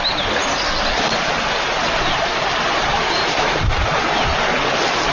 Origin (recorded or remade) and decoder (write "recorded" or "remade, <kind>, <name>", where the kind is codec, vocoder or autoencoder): recorded